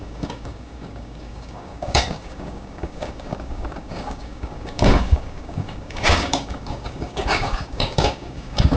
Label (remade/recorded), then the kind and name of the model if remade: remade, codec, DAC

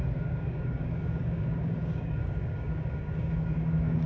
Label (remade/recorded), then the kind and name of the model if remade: remade, codec, DAC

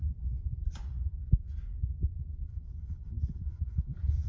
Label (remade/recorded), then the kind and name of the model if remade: remade, vocoder, Vocos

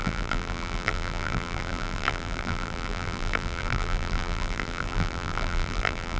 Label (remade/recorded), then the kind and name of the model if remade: remade, vocoder, BigVGAN v2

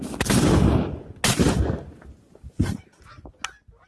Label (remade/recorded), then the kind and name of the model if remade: recorded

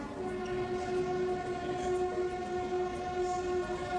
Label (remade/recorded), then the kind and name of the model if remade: recorded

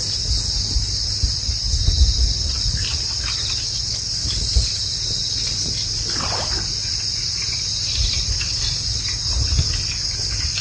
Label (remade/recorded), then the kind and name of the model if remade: recorded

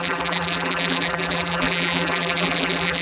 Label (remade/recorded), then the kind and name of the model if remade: remade, vocoder, BigVGAN v2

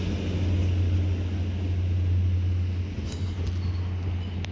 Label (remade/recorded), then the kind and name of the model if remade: recorded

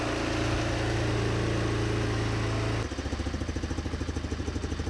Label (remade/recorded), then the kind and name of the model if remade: recorded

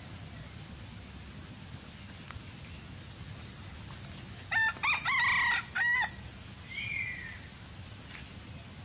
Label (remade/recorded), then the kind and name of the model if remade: recorded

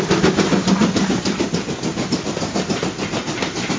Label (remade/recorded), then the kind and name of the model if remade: recorded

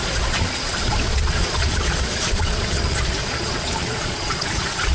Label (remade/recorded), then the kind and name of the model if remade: remade, vocoder, Vocos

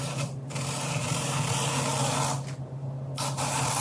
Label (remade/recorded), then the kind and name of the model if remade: recorded